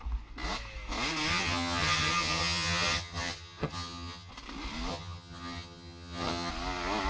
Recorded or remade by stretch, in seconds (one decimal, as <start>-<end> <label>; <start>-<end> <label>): 0.0-1.3 recorded; 1.3-4.3 remade; 4.3-4.9 recorded; 4.9-6.5 remade; 6.5-7.1 recorded